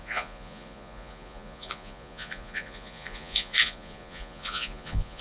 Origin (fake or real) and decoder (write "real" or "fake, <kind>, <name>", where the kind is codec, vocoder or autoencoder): fake, vocoder, Vocos